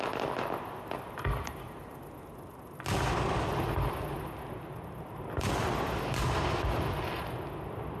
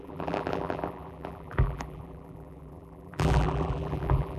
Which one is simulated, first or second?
second